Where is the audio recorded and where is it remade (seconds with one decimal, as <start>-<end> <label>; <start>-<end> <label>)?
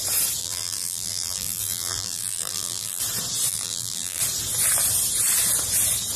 0.0-0.4 recorded; 0.4-3.0 remade; 3.0-3.5 recorded; 3.5-4.2 remade; 4.2-6.2 recorded